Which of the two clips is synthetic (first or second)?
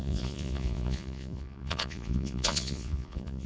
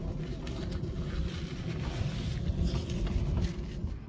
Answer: first